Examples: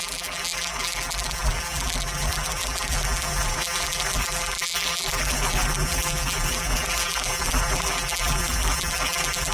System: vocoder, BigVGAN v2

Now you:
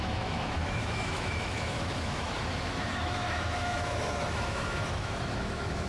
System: autoencoder, DAC-VAE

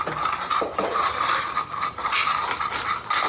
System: none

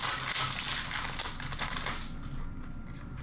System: none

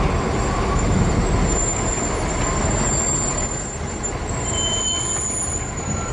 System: none